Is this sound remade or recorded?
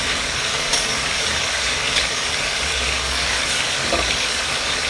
remade